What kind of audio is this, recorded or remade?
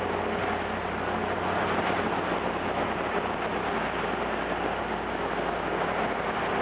recorded